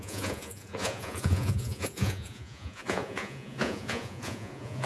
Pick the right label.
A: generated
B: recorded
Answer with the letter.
A